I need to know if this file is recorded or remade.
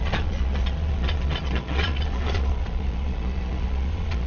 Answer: remade